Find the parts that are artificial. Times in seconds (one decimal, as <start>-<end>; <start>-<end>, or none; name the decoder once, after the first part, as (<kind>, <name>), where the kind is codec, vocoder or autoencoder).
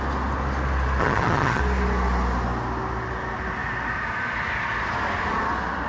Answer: 1.0-1.6 (vocoder, HiFi-GAN)